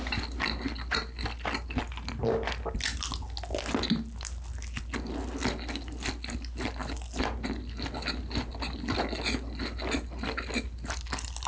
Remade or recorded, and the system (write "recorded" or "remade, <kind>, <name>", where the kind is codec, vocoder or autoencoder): recorded